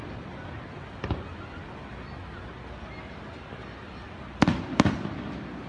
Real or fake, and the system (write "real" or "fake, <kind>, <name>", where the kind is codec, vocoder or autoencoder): real